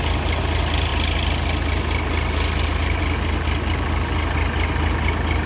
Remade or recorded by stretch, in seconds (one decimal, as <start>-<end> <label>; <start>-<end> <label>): 0.0-5.5 recorded